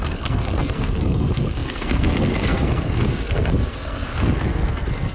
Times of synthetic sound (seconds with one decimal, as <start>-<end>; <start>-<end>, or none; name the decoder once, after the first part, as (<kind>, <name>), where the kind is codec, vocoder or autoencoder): 0.0-5.1 (codec, SNAC)